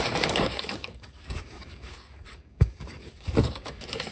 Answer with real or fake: fake